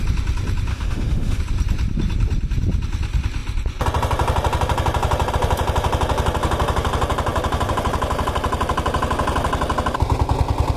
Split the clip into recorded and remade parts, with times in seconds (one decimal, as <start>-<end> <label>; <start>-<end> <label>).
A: 0.0-0.7 recorded; 0.7-1.4 remade; 1.4-10.8 recorded